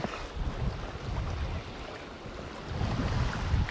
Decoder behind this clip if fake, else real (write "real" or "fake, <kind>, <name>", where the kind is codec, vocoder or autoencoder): real